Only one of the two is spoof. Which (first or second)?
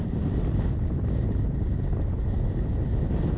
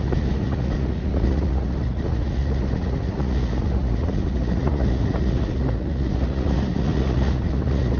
second